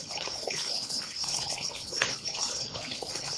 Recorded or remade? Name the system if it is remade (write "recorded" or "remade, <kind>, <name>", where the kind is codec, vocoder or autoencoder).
remade, codec, HILCodec